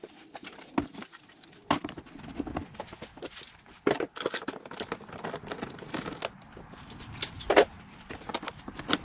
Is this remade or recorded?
recorded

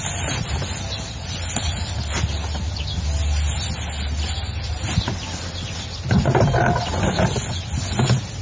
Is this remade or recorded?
recorded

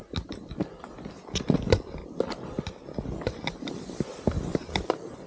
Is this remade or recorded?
recorded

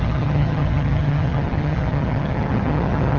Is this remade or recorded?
remade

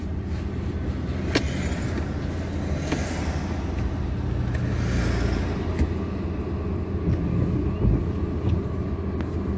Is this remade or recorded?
recorded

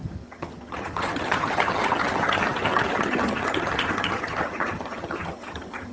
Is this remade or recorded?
remade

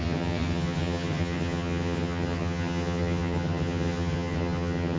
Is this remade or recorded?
remade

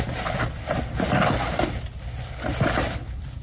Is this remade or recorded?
recorded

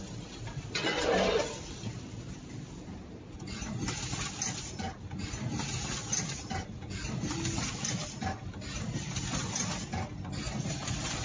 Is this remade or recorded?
recorded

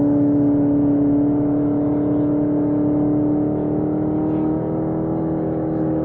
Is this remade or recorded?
recorded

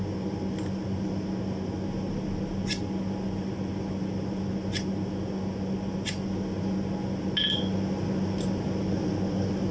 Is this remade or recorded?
recorded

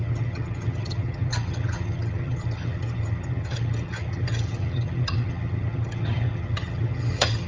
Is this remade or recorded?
remade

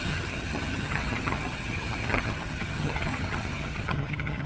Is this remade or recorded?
remade